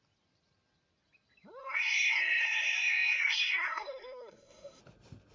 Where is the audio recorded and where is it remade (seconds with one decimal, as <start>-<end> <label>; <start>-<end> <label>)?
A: 0.0-1.6 recorded; 1.6-4.8 remade; 4.8-5.3 recorded